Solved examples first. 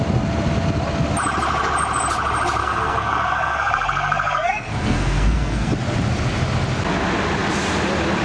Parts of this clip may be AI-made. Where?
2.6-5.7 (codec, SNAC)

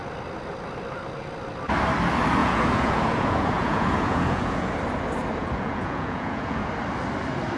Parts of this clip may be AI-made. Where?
2.4-4.7 (vocoder, Vocos); 5.4-6.7

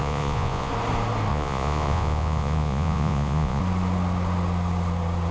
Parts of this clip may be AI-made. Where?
0.0-0.7 (vocoder, Vocos); 1.3-3.6

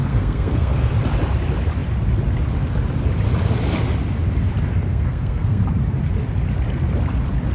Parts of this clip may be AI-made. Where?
0.0-0.9 (codec, SNAC); 4.9-5.6

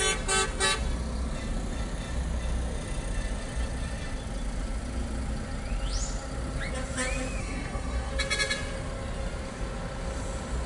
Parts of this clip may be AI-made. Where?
7.4-8.1 (codec, SNAC)